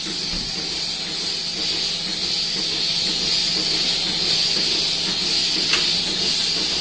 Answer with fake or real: real